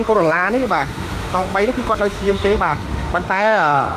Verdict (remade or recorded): remade